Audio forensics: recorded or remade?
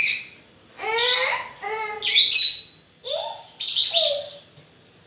recorded